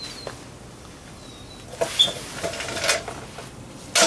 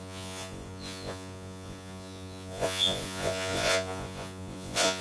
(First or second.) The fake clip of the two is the second